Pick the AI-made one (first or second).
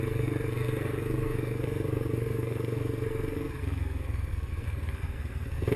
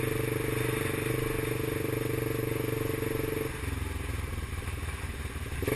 first